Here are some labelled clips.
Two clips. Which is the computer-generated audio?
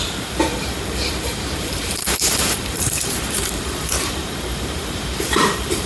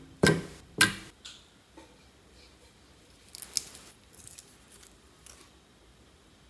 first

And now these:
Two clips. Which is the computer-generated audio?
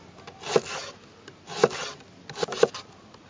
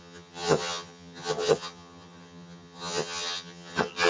second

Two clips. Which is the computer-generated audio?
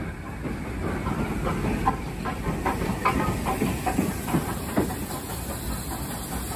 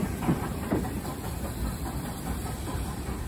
second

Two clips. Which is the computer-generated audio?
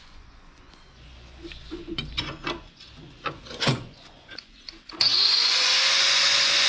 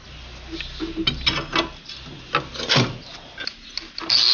first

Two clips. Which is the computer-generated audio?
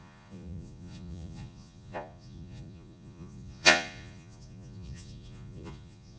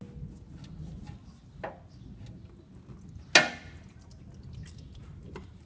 first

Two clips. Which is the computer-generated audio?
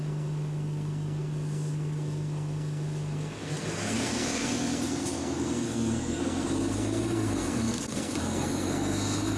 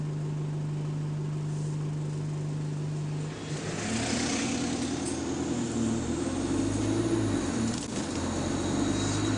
first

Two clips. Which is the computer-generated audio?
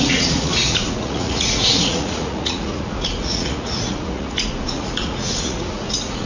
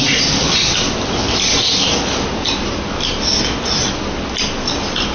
first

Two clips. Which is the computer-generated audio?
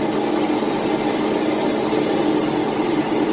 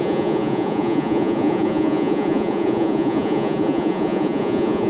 second